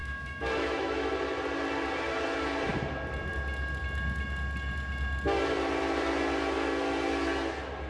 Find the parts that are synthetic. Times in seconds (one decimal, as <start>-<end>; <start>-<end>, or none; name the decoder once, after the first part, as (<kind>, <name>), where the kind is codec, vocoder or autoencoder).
0.0-1.1 (autoencoder, DAC-VAE)